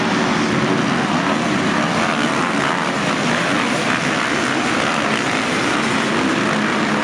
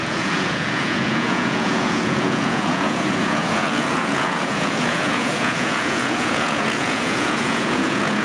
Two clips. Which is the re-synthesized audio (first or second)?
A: second